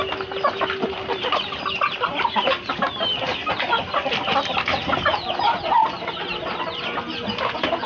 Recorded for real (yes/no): yes